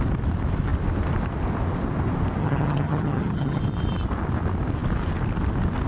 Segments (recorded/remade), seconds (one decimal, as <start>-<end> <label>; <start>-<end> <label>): 0.0-2.4 recorded; 2.4-3.6 remade; 3.6-5.9 recorded